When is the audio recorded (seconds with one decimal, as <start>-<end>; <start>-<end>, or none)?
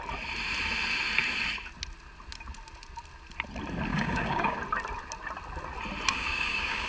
0.0-3.9; 4.6-6.1